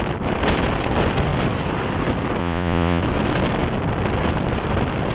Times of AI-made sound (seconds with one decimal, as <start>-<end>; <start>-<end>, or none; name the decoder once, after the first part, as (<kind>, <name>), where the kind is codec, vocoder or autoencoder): 2.4-3.0 (vocoder, Vocos)